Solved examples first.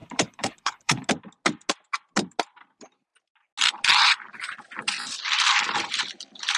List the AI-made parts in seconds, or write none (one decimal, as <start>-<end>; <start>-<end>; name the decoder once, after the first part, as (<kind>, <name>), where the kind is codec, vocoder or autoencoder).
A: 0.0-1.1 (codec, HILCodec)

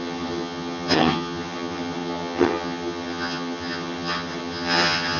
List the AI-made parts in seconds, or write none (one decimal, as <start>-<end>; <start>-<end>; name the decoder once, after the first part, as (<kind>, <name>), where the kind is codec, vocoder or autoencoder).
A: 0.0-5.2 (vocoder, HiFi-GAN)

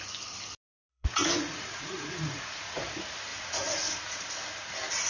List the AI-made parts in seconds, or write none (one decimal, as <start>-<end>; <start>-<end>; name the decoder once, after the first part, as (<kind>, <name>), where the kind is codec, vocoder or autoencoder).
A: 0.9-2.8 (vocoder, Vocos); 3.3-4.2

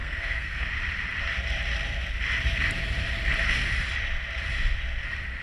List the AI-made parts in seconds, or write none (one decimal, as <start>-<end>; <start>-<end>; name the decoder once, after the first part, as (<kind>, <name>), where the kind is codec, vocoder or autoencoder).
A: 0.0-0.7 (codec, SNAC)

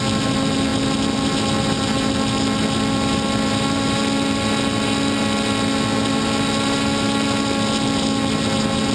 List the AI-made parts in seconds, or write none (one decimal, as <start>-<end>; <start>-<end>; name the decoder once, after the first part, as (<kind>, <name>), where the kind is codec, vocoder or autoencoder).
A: none

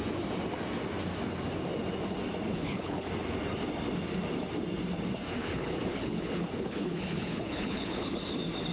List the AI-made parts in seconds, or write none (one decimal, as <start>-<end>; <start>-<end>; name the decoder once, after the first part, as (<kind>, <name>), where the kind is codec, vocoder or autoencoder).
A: 2.5-3.1 (codec, HILCodec); 5.4-8.2

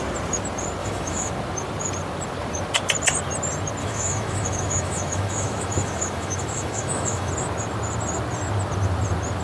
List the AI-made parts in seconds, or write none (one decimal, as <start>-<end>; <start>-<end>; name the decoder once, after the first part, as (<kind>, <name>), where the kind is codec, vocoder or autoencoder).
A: 0.8-1.3 (autoencoder, DAC-VAE); 3.8-7.3

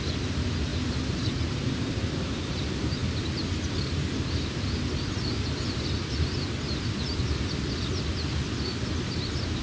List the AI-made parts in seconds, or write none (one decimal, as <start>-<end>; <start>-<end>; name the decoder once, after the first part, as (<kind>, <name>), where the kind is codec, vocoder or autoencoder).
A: none